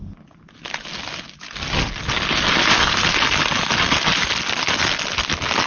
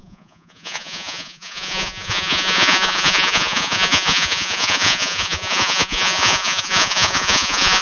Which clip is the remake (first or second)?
second